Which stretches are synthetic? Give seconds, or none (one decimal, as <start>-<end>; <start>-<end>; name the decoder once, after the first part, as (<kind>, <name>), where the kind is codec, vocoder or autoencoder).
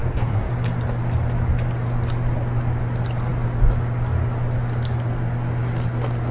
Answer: 0.0-0.5 (codec, SNAC)